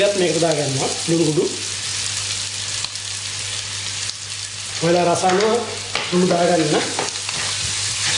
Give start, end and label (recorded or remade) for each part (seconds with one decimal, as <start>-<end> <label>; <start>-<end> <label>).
0.0-8.2 recorded